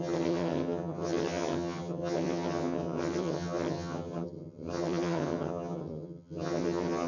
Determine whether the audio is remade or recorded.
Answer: remade